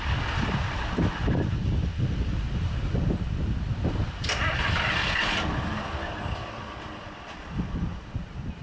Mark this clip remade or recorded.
recorded